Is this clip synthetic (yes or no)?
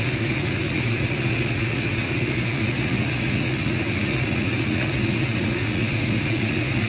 yes